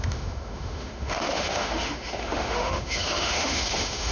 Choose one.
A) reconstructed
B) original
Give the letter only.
A